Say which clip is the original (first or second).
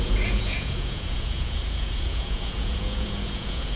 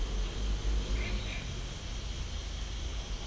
second